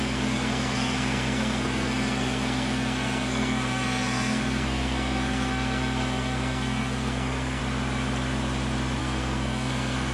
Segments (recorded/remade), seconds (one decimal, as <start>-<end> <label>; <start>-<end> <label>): 0.0-7.6 remade; 7.6-9.0 recorded; 9.0-10.1 remade